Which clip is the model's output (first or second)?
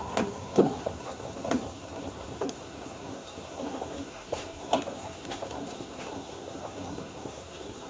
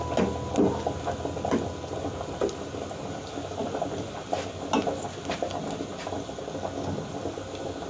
first